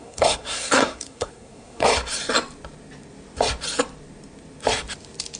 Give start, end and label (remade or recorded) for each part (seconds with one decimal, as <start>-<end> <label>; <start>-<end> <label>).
0.0-1.9 remade; 1.9-5.4 recorded